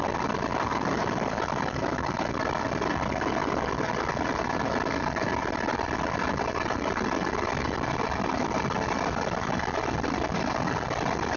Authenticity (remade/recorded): recorded